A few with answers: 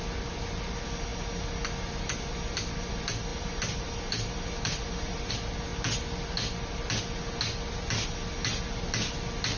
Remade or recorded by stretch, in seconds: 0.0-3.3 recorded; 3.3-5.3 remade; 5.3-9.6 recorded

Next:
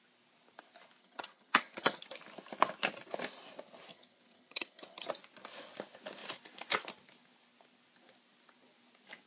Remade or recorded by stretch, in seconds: 0.0-1.0 recorded; 1.0-2.0 remade; 2.0-3.9 recorded; 3.9-5.1 remade; 5.1-9.3 recorded

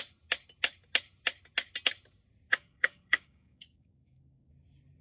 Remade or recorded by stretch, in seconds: 0.0-2.5 recorded; 2.5-4.5 remade; 4.5-5.0 recorded

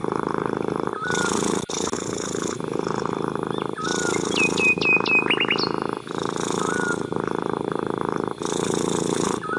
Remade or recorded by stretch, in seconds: 0.0-9.6 recorded

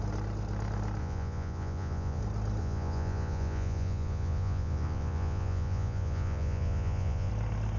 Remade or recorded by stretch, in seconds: 0.0-1.0 recorded; 1.0-2.2 remade; 2.2-2.6 recorded; 2.6-7.3 remade; 7.3-7.8 recorded

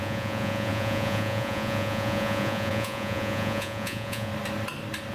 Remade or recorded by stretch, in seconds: 0.0-4.3 remade; 4.3-5.1 recorded